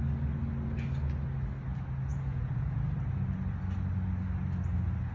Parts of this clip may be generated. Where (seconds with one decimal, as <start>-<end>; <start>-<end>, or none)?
2.1-2.8